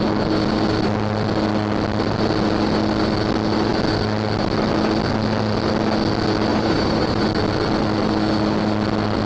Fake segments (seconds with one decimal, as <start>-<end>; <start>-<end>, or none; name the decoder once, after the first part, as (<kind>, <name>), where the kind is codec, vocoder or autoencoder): 6.5-7.2 (vocoder, BigVGAN v2)